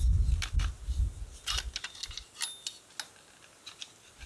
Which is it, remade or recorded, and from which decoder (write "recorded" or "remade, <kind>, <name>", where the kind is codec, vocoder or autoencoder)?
recorded